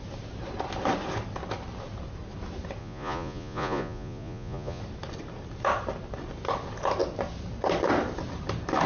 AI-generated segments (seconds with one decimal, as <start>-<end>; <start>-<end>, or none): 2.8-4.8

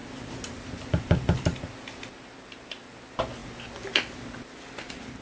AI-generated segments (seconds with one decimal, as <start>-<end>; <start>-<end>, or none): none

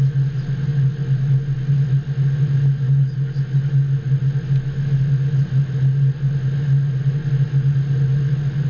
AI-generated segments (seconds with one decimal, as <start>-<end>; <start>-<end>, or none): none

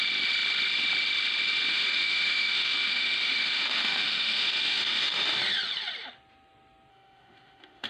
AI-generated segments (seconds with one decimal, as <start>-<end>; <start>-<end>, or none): 1.7-5.4; 6.9-7.9